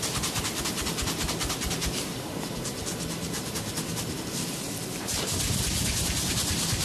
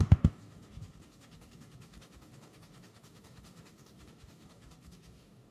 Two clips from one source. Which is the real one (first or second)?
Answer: first